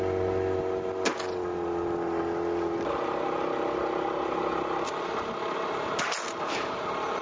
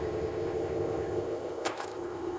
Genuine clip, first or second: first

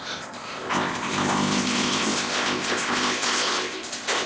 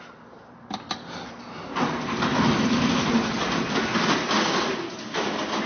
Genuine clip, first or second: second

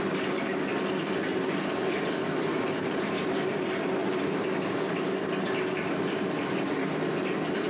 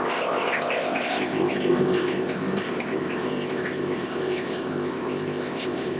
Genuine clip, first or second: first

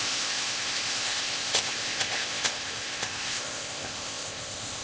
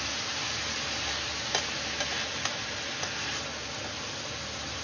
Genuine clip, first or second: second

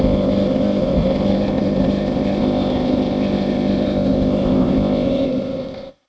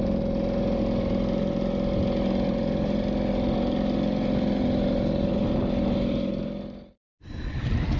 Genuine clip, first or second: second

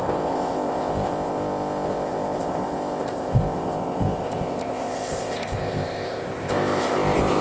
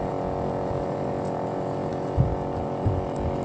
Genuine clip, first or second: second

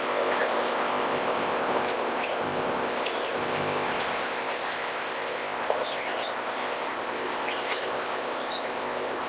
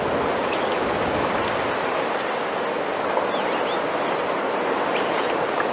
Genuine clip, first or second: second